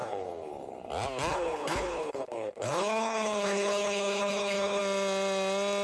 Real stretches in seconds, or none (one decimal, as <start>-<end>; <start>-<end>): 0.9-1.3; 4.8-5.8